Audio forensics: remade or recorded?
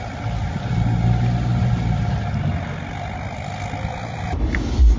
recorded